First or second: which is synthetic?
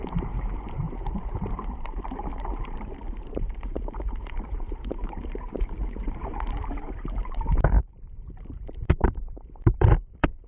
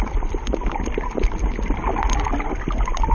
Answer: first